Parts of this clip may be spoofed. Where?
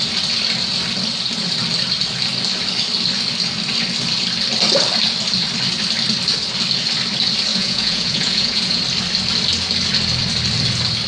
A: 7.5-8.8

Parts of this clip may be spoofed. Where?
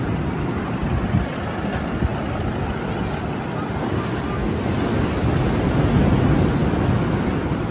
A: none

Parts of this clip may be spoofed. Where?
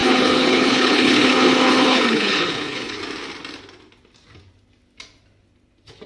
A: 0.0-3.0